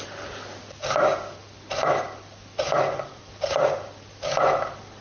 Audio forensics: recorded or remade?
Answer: recorded